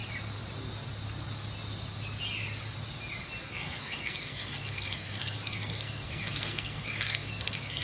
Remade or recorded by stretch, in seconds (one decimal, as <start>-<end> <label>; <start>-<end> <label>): 0.0-3.4 recorded; 3.4-7.8 remade

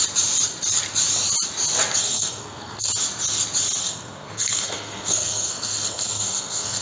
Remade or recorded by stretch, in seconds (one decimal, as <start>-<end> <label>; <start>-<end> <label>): 0.0-2.0 recorded; 2.0-2.9 remade; 2.9-3.8 recorded; 3.8-6.8 remade

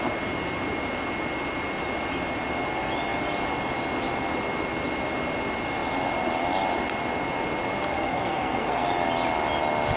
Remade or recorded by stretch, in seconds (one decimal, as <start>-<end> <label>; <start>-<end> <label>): 0.0-7.9 recorded; 7.9-8.9 remade; 8.9-10.0 recorded

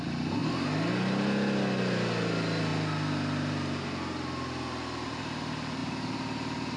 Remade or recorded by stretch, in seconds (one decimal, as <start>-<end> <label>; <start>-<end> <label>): 0.0-6.8 recorded

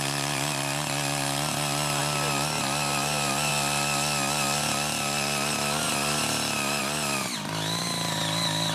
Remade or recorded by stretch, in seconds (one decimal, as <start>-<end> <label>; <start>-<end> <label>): 0.0-8.7 recorded

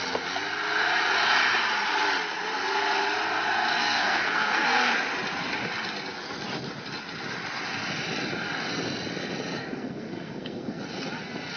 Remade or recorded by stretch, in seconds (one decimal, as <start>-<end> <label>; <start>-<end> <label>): 0.0-3.7 recorded; 3.7-4.9 remade; 4.9-9.6 recorded; 9.6-10.8 remade; 10.8-11.6 recorded

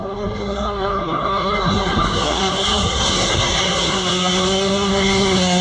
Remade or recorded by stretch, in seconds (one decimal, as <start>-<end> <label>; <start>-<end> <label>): 0.0-5.6 remade